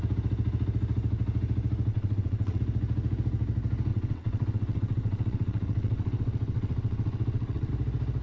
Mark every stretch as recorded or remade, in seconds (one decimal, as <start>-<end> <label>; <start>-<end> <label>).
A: 0.0-1.9 recorded; 1.9-2.6 remade; 2.6-3.9 recorded; 3.9-7.7 remade; 7.7-8.2 recorded